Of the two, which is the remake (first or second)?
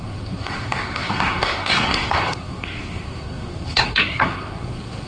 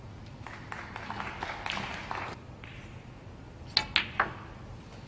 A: first